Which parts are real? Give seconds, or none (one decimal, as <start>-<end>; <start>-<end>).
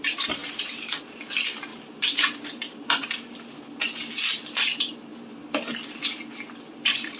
0.0-0.4; 1.0-1.7; 3.6-7.2